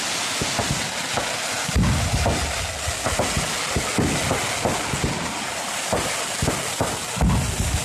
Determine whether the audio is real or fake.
real